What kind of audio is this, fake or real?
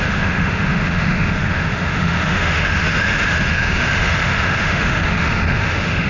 fake